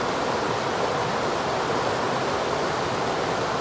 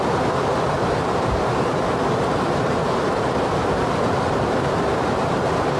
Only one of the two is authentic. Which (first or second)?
first